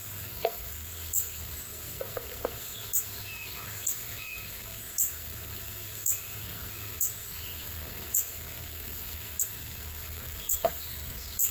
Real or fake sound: fake